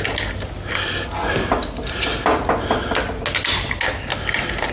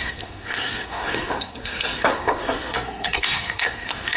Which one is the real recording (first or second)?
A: first